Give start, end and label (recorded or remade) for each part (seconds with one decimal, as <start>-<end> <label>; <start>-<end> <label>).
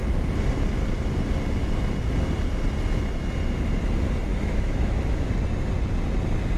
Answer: 0.0-4.3 recorded; 4.3-5.3 remade; 5.3-6.6 recorded